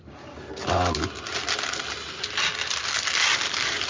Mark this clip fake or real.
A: real